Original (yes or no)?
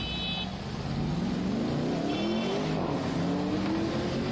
yes